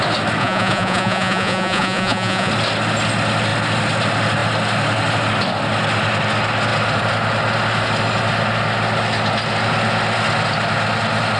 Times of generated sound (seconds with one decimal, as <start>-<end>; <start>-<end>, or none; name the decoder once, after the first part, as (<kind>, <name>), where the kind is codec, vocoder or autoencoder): 0.4-2.5 (vocoder, Vocos)